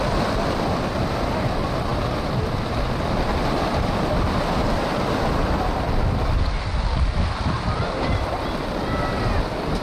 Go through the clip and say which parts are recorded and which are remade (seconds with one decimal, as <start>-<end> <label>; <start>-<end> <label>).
0.0-9.8 recorded